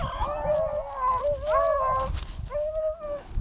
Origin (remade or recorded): recorded